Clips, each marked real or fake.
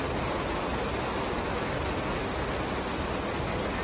real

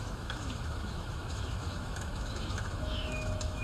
fake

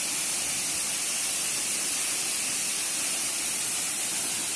real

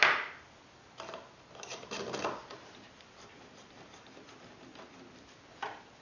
real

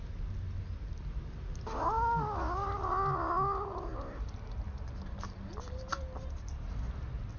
real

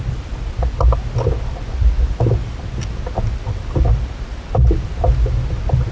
real